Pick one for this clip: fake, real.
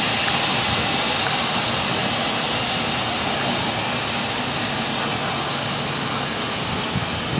real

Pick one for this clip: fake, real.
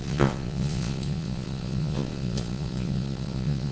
fake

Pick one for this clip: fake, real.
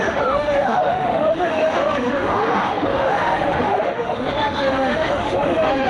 fake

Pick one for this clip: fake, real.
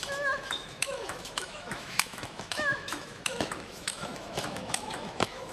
fake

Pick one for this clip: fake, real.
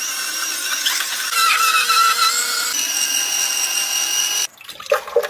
real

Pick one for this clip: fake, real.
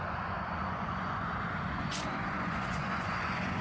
fake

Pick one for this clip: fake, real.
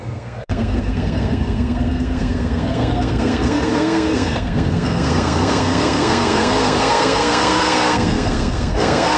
fake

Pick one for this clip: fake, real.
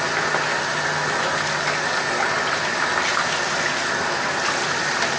real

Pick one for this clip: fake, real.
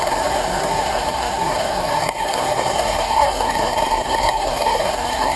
fake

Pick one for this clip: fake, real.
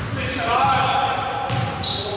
real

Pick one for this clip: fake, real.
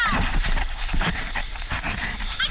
fake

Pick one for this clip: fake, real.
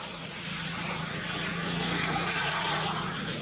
fake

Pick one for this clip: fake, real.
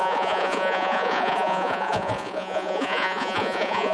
fake